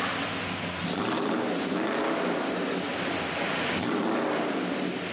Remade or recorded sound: recorded